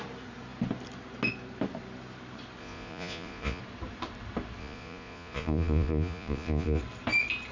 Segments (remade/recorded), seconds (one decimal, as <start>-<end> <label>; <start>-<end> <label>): 0.0-2.6 recorded; 2.6-3.6 remade; 3.6-4.6 recorded; 4.6-6.8 remade; 6.8-7.5 recorded